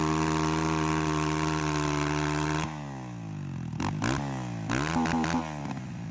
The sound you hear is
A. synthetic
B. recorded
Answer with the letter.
B